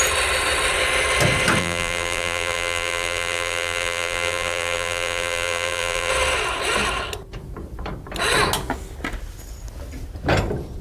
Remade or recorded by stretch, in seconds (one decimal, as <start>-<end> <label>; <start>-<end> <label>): 0.0-1.6 recorded; 1.6-6.1 remade; 6.1-10.8 recorded